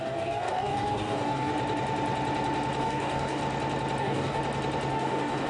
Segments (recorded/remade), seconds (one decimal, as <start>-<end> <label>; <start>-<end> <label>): 0.0-1.5 remade; 1.5-2.8 recorded; 2.8-3.4 remade; 3.4-4.0 recorded; 4.0-4.4 remade; 4.4-4.9 recorded; 4.9-5.5 remade